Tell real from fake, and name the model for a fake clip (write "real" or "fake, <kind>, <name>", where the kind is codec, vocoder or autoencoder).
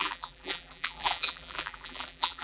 fake, vocoder, BigVGAN v2